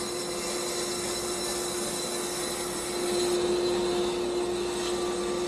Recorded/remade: recorded